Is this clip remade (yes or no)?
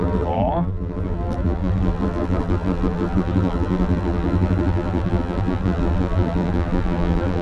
yes